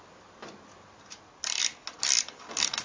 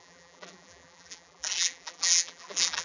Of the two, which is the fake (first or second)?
second